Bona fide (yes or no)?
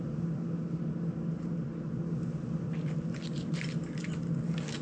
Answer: yes